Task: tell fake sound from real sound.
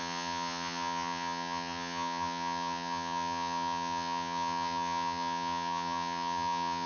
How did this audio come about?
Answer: fake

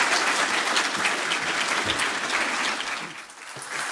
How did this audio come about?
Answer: real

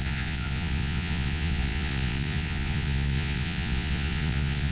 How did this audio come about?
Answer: fake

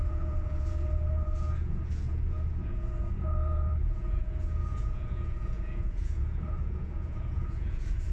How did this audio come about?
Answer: fake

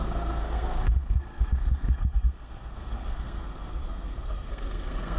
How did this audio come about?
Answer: fake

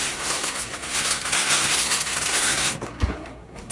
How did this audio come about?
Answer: fake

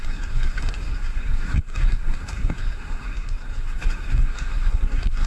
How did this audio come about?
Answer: fake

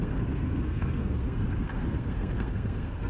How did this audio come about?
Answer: fake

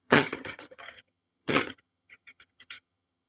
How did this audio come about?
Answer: fake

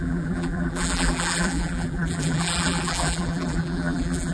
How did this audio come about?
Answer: fake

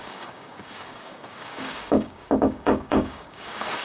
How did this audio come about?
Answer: fake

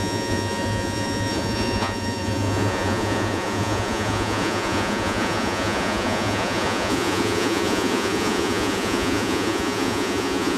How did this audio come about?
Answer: fake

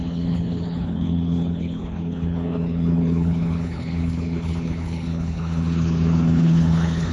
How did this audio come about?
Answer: fake